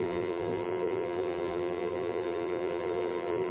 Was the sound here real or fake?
fake